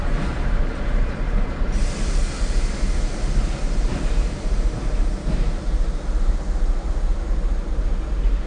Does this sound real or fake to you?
fake